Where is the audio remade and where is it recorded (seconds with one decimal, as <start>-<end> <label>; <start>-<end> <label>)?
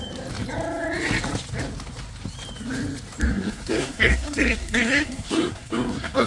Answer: 0.0-3.3 recorded; 3.3-6.3 remade